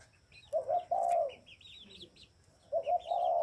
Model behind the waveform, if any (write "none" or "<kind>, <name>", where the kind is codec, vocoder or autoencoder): none